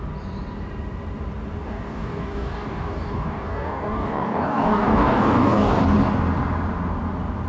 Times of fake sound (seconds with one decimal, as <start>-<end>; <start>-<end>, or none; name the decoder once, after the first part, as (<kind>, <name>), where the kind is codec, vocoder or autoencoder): 1.6-5.8 (codec, DAC)